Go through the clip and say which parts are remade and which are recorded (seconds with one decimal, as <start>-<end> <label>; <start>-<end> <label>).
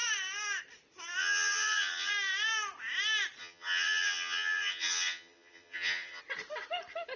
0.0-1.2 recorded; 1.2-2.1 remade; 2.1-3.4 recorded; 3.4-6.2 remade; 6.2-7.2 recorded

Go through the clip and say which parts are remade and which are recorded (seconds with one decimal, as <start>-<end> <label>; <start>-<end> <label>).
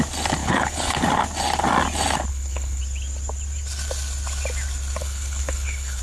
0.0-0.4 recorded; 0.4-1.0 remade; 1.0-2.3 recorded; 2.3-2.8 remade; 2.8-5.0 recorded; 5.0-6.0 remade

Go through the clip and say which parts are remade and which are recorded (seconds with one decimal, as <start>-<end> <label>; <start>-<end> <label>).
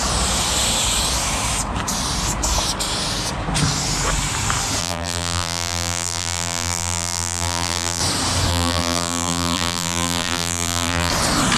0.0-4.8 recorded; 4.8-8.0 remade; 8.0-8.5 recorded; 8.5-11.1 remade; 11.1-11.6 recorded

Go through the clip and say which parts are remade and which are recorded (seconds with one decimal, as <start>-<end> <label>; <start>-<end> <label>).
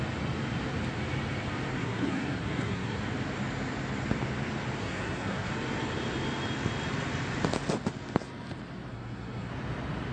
0.0-1.7 recorded; 1.7-3.0 remade; 3.0-4.8 recorded; 4.8-5.5 remade; 5.5-8.9 recorded; 8.9-9.5 remade; 9.5-10.1 recorded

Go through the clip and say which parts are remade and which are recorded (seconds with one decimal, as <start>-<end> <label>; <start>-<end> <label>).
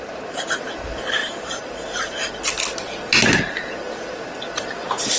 0.0-1.2 recorded; 1.2-2.4 remade; 2.4-5.2 recorded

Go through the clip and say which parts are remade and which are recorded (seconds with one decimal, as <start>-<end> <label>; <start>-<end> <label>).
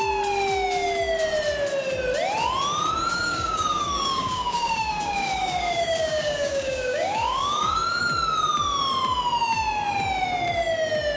0.0-3.1 recorded; 3.1-8.0 remade; 8.0-11.2 recorded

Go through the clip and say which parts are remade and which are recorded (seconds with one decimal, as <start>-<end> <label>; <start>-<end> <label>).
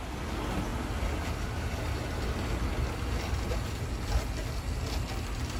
0.0-5.6 recorded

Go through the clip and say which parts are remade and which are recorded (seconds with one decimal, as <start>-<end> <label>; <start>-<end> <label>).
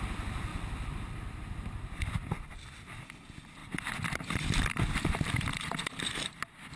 0.0-6.8 recorded